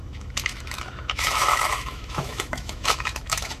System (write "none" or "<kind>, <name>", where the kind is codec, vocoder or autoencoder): autoencoder, DAC-VAE